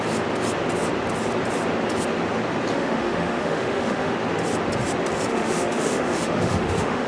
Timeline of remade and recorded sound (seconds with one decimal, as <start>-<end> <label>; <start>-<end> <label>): 0.0-2.7 recorded; 2.7-4.1 remade; 4.1-5.3 recorded; 5.3-7.1 remade

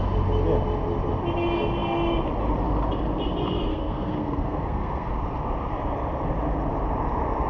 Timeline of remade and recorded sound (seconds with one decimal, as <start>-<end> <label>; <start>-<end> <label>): 0.0-3.7 recorded; 3.7-5.1 remade; 5.1-7.5 recorded

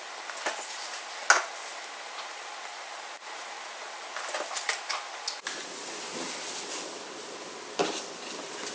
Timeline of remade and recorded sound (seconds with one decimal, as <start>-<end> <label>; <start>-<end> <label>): 0.0-8.7 recorded

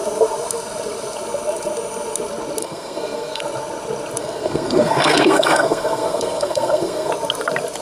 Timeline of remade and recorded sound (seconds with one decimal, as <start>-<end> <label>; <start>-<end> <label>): 0.0-2.6 recorded; 2.6-3.4 remade; 3.4-4.2 recorded; 4.2-7.1 remade; 7.1-7.8 recorded

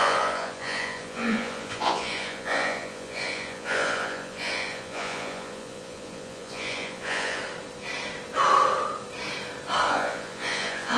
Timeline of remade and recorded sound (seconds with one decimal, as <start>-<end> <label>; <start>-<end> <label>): 0.0-7.4 remade; 7.4-9.9 recorded; 9.9-11.0 remade

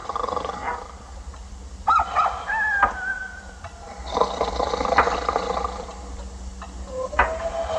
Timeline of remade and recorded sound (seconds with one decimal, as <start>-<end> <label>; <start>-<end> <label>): 0.0-4.5 remade; 4.5-7.8 recorded